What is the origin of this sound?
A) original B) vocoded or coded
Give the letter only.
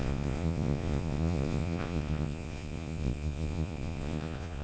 B